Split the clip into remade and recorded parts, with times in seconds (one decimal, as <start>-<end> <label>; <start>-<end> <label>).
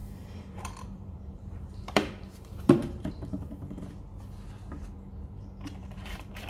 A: 0.0-3.9 remade; 3.9-5.8 recorded; 5.8-6.5 remade